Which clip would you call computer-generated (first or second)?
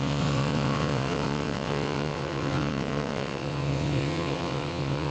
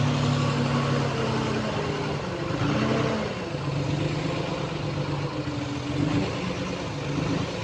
first